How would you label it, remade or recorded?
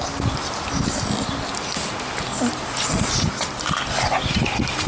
recorded